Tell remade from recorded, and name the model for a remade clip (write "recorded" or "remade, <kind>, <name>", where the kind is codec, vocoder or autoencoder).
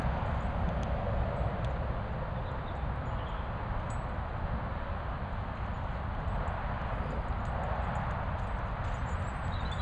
recorded